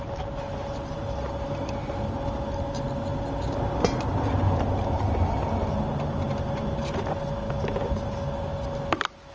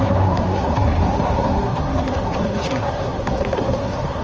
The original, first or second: first